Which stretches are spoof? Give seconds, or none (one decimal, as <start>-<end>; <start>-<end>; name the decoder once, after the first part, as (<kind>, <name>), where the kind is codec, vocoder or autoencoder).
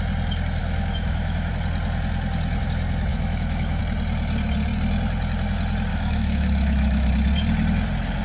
0.6-1.5 (autoencoder, DAC-VAE); 3.1-3.8; 5.9-7.1